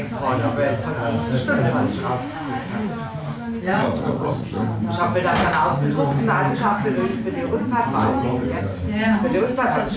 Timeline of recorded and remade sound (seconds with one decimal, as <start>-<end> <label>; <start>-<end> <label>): 0.0-3.7 recorded; 3.7-4.6 remade; 4.6-10.0 recorded